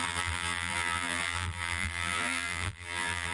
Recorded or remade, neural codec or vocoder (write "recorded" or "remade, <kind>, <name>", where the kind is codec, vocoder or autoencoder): remade, vocoder, BigVGAN v2